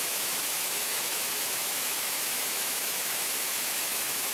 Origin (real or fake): fake